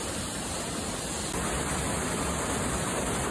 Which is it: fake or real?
real